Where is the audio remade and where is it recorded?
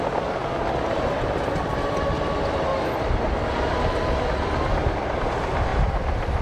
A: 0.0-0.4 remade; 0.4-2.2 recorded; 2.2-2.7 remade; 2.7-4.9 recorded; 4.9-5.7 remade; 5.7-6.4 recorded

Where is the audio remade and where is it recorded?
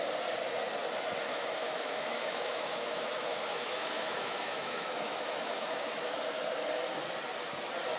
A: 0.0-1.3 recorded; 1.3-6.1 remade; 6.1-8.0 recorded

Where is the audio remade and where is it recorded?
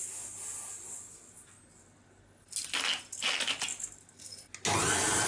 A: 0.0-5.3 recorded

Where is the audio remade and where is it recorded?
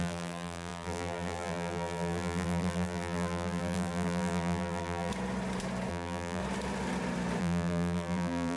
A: 0.0-5.1 remade; 5.1-5.9 recorded; 5.9-6.4 remade; 6.4-7.4 recorded; 7.4-8.6 remade